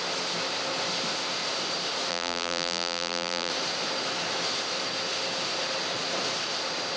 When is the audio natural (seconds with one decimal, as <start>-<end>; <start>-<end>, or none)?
0.0-2.1; 3.5-7.0